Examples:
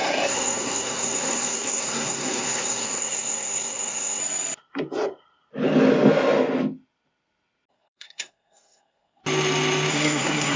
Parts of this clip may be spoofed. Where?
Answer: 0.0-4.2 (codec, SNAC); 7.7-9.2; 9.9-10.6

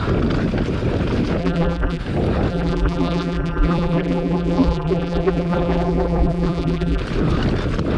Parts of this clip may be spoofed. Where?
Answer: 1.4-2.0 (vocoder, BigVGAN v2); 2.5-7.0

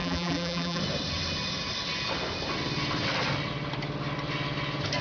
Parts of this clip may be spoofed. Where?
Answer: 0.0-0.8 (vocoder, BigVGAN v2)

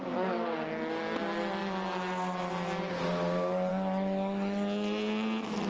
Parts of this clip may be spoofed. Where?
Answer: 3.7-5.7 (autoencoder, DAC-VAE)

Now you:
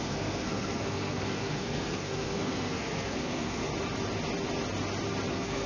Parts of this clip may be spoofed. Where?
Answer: 0.0-3.7 (codec, SNAC); 5.3-5.7

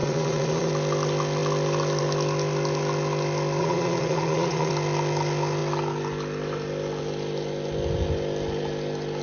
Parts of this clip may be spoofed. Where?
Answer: 0.0-0.7 (vocoder, Vocos); 3.6-4.7

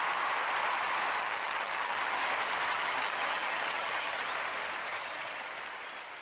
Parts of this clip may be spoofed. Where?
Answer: 1.2-2.2 (vocoder, HiFi-GAN); 2.7-4.2; 4.9-5.5

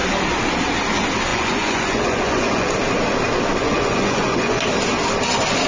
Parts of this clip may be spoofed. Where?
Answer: 1.3-2.7 (vocoder, Vocos); 3.6-4.6